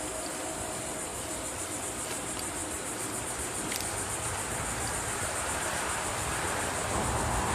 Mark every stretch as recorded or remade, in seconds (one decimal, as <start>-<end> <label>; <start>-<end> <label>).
0.0-1.1 remade; 1.1-1.8 recorded; 1.8-2.6 remade; 2.6-3.3 recorded; 3.3-7.5 remade

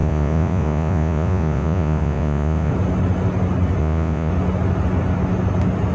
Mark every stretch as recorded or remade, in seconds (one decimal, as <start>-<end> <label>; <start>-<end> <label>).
0.0-2.7 remade; 2.7-3.8 recorded; 3.8-4.3 remade; 4.3-5.9 recorded

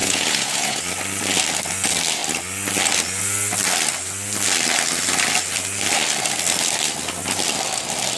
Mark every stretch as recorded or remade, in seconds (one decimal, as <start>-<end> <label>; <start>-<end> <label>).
0.0-0.8 remade; 0.8-8.2 recorded

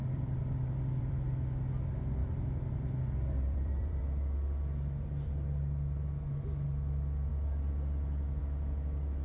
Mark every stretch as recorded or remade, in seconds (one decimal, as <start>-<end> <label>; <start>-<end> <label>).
0.0-1.3 remade; 1.3-2.2 recorded; 2.2-4.0 remade; 4.0-9.2 recorded

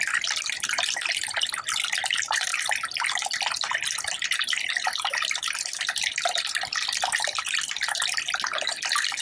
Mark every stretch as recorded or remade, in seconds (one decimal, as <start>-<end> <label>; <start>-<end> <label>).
0.0-9.2 recorded

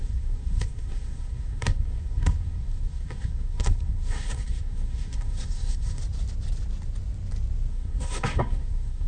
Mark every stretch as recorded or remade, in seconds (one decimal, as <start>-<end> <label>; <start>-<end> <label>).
0.0-6.0 remade; 6.0-7.7 recorded; 7.7-9.1 remade